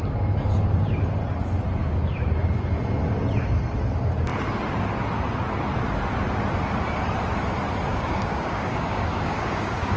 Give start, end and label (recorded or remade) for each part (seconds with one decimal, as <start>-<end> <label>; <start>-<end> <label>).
0.0-7.9 recorded; 7.9-10.0 remade